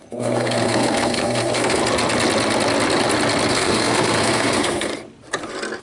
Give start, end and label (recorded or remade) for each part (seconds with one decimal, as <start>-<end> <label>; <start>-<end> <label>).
0.0-1.8 remade; 1.8-3.5 recorded; 3.5-4.9 remade; 4.9-5.8 recorded